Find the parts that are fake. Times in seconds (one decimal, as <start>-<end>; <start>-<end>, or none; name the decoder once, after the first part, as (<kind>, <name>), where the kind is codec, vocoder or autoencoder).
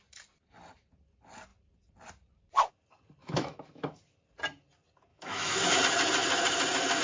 3.2-4.0 (autoencoder, DAC-VAE); 5.1-5.8